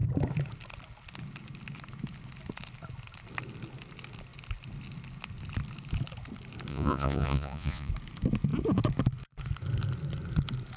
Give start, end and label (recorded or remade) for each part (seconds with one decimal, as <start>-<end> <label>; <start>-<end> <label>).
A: 0.0-6.7 recorded; 6.7-7.9 remade; 7.9-10.8 recorded